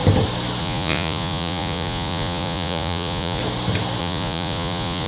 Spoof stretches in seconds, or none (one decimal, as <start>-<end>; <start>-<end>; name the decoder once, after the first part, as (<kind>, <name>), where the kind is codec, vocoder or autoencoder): 0.6-3.4 (vocoder, Vocos); 4.0-5.1